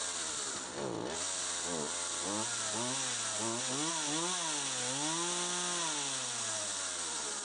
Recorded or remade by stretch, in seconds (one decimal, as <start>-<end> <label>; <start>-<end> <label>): 0.0-7.4 recorded

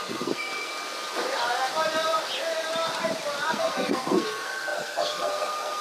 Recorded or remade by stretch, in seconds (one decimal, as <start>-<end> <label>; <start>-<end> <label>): 0.0-0.7 remade; 0.7-3.5 recorded; 3.5-5.8 remade

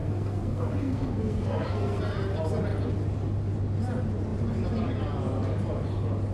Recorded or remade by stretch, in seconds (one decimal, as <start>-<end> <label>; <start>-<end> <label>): 0.0-2.0 remade; 2.0-6.3 recorded

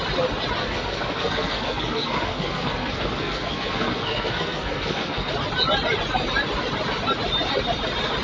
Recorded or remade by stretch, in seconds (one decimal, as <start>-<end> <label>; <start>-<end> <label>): 0.0-0.6 recorded; 0.6-5.3 remade; 5.3-8.2 recorded

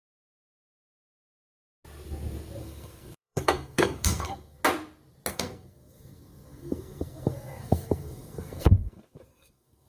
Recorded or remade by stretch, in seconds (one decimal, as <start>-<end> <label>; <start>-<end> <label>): 0.0-2.6 recorded; 2.6-4.6 remade; 4.6-5.3 recorded; 5.3-9.9 remade

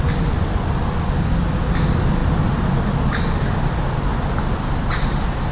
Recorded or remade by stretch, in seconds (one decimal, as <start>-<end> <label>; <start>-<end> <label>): 0.0-5.5 recorded